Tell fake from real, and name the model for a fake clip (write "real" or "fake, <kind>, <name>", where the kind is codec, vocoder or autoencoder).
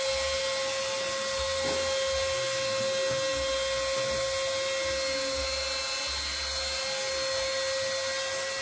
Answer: real